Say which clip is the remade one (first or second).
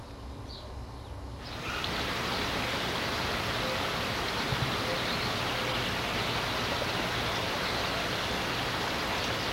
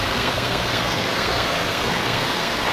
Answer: second